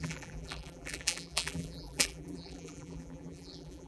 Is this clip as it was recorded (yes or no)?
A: no